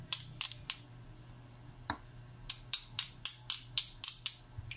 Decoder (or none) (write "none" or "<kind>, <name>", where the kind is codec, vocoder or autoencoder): vocoder, BigVGAN v2